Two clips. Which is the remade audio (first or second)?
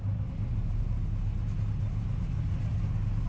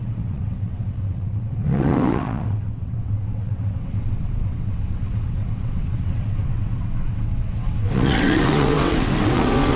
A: second